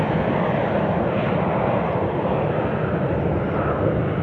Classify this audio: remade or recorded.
recorded